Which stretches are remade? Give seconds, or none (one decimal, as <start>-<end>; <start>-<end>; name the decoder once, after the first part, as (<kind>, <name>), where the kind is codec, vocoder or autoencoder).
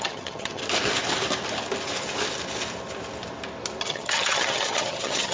0.0-0.6 (vocoder, HiFi-GAN); 3.8-5.3